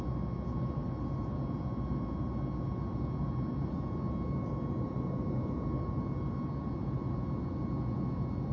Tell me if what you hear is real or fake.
real